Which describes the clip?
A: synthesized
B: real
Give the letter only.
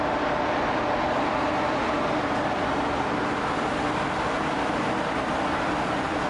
B